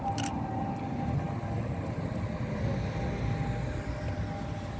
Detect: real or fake real